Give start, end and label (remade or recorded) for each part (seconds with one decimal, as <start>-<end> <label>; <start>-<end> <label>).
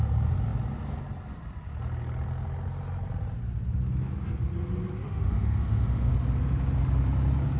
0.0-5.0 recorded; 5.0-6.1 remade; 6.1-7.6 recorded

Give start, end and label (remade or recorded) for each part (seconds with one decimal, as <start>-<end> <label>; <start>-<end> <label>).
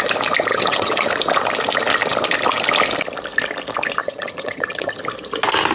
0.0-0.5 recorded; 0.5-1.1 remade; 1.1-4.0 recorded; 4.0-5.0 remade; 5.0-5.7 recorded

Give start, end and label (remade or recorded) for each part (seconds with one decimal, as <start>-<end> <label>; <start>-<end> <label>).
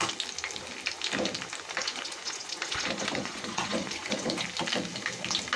0.0-1.8 recorded; 1.8-4.4 remade; 4.4-5.6 recorded